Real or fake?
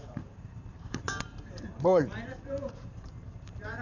fake